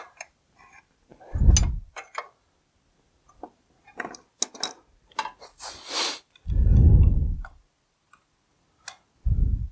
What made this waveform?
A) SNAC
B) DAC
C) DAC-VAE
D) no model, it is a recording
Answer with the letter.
D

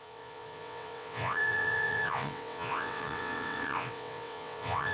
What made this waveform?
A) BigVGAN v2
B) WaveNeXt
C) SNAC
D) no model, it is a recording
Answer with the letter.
B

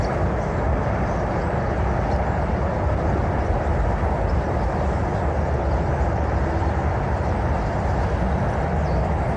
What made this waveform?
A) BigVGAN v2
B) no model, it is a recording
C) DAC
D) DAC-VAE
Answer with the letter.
B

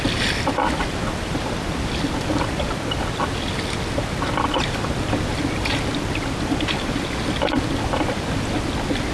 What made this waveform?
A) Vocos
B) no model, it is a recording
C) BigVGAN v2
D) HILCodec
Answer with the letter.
B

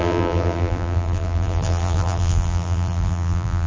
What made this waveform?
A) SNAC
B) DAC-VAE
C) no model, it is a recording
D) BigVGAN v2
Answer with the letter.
D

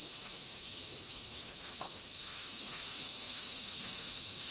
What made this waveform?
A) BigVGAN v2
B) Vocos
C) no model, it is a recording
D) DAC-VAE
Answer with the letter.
D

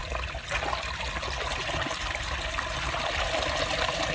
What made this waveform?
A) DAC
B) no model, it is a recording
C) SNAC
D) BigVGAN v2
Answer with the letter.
B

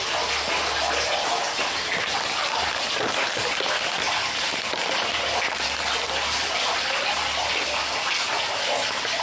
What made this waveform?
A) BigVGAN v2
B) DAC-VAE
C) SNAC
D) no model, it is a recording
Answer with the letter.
D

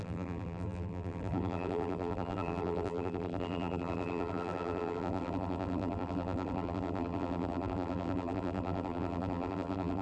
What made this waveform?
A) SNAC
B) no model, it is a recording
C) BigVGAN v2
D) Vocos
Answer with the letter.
C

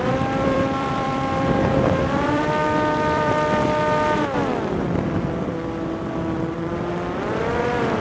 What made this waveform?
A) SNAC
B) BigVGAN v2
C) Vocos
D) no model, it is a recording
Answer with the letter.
B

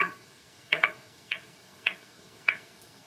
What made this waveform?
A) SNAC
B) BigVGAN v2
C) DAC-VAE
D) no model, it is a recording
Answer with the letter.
A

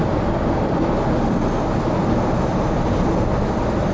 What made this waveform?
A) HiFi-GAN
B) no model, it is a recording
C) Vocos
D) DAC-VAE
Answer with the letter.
B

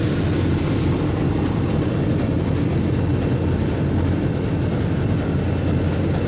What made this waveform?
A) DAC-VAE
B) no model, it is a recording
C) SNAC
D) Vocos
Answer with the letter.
B